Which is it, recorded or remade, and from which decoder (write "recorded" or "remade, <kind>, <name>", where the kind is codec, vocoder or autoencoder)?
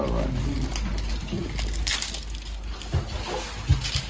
recorded